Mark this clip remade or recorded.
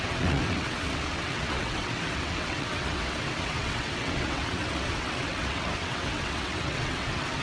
remade